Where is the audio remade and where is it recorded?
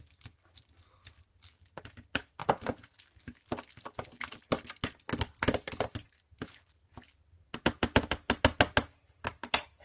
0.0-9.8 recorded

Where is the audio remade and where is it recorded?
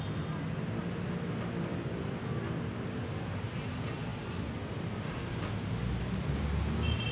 0.0-7.1 recorded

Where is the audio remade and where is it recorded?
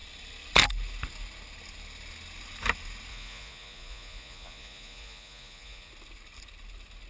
0.0-3.1 recorded; 3.1-5.9 remade; 5.9-7.1 recorded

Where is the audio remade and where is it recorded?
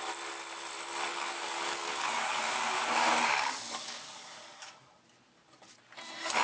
0.0-1.1 recorded; 1.1-4.9 remade; 4.9-6.4 recorded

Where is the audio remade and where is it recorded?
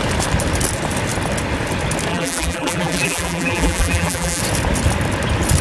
0.0-2.1 recorded; 2.1-4.4 remade; 4.4-5.6 recorded